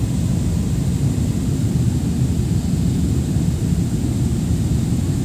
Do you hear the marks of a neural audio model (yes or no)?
no